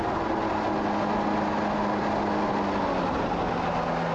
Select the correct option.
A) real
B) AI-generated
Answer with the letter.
A